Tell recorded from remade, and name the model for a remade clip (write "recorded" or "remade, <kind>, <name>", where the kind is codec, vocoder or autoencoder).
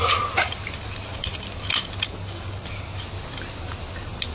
recorded